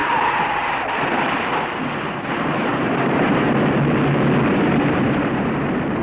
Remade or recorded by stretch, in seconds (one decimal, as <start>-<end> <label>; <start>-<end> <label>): 0.0-2.7 recorded; 2.7-3.5 remade; 3.5-4.5 recorded; 4.5-6.0 remade